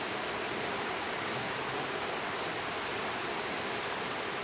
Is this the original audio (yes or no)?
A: yes